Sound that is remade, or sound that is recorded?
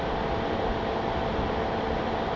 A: recorded